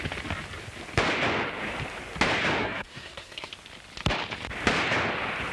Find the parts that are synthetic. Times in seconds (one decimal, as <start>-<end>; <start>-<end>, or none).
2.6-3.5